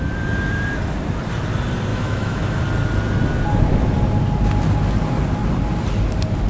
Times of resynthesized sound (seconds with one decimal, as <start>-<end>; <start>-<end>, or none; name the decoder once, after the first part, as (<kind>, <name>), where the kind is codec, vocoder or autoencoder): 1.9-2.6 (autoencoder, DAC-VAE)